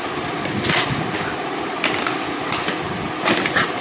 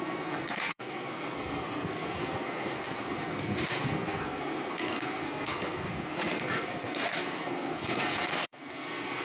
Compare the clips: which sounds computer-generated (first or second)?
second